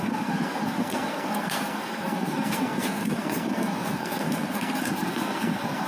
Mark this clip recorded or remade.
remade